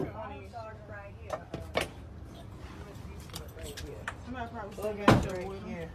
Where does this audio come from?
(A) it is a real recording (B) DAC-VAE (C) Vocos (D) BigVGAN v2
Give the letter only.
A